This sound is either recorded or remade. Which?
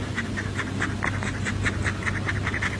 recorded